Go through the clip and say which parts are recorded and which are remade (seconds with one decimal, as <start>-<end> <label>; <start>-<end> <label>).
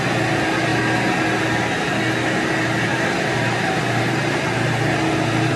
0.0-2.9 recorded; 2.9-5.6 remade